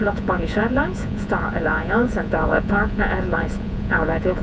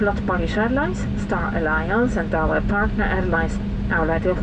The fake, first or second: first